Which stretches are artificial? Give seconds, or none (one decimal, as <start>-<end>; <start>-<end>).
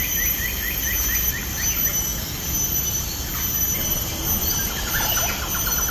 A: none